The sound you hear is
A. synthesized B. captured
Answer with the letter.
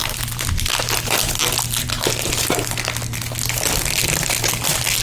B